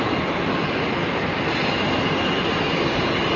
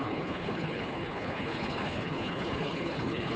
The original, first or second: first